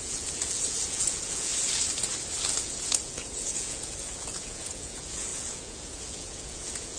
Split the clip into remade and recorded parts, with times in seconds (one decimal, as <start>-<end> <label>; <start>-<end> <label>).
0.0-1.5 remade; 1.5-2.5 recorded; 2.5-7.0 remade